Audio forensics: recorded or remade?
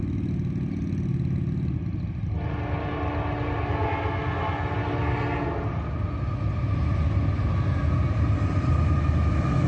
recorded